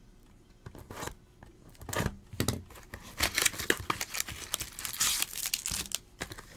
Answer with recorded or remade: recorded